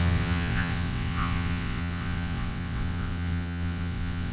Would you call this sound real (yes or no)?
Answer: no